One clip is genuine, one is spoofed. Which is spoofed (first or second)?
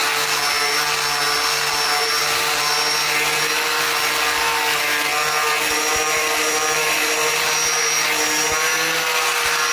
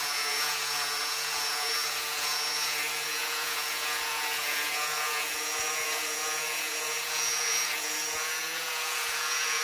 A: second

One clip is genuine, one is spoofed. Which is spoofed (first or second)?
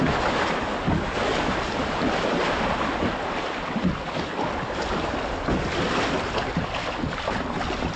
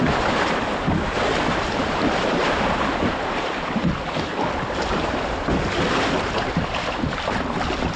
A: second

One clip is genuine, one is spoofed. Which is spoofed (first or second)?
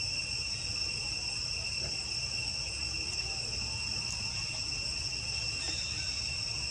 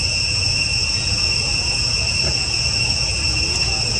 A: second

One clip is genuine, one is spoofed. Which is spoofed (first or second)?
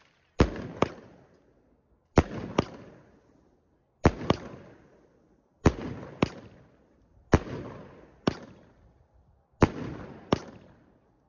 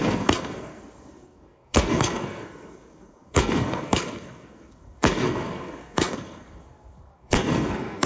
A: second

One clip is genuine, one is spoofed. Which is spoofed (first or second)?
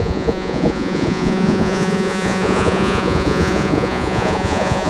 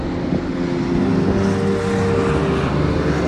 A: first